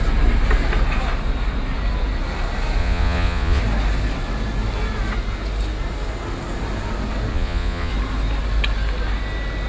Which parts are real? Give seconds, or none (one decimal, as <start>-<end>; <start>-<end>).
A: 0.0-2.8; 3.6-7.3; 7.9-9.7